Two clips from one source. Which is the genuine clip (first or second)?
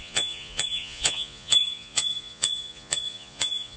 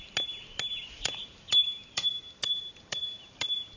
second